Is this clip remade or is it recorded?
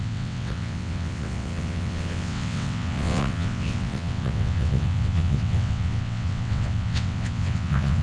remade